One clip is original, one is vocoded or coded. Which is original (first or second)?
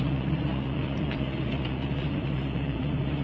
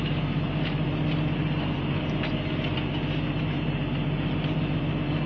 second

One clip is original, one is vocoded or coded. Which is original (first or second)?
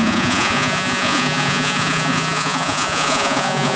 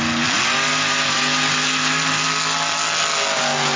second